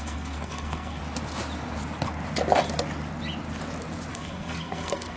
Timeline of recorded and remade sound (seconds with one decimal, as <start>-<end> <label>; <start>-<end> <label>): 0.0-1.0 remade; 1.0-4.1 recorded; 4.1-5.2 remade